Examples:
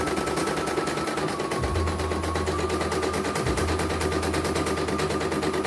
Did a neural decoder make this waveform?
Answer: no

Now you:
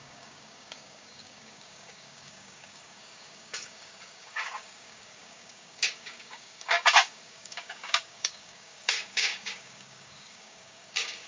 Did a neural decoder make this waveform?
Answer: yes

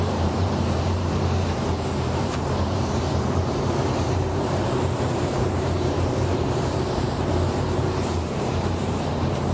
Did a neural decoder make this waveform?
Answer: yes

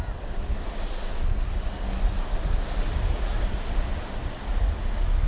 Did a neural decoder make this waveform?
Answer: no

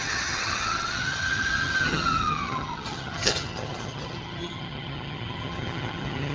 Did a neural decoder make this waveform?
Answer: yes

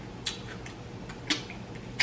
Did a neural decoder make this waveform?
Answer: no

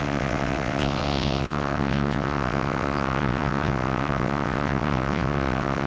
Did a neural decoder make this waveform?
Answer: yes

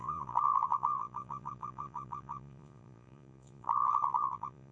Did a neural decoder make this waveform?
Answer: yes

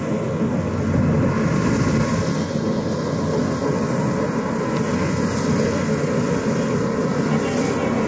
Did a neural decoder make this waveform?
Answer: no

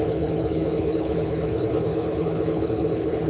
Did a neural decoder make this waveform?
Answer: yes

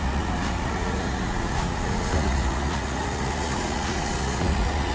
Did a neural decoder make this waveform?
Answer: yes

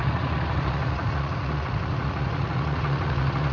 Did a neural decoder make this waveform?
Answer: yes